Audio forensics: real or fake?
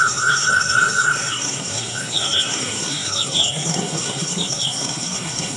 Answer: fake